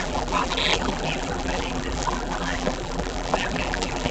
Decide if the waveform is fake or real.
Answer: fake